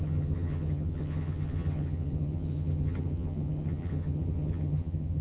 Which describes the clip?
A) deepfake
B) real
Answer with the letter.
A